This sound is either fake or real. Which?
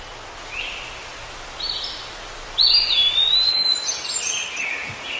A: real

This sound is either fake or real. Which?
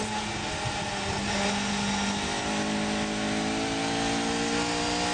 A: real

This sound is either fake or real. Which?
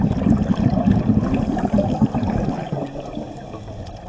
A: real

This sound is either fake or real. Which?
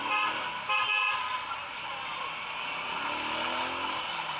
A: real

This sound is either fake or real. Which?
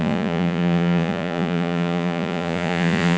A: fake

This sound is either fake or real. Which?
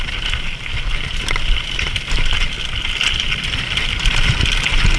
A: real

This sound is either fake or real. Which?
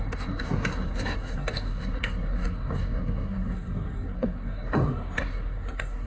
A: fake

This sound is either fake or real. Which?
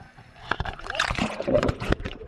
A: fake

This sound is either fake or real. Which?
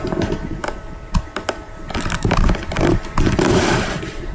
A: fake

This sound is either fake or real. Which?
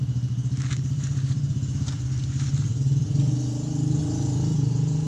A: fake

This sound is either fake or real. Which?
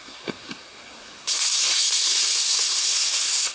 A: fake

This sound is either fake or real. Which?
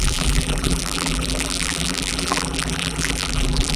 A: fake